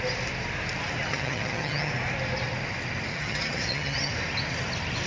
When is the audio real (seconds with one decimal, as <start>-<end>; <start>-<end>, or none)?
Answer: 0.0-1.1; 1.9-3.1; 4.1-5.1